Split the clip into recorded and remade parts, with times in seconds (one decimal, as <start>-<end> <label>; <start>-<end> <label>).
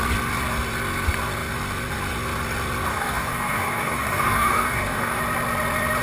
0.0-2.9 recorded; 2.9-5.2 remade; 5.2-6.0 recorded